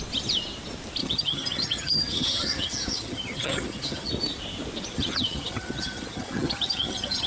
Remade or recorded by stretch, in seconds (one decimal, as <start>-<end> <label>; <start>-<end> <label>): 0.0-1.0 recorded; 1.0-4.1 remade; 4.1-4.9 recorded; 4.9-7.3 remade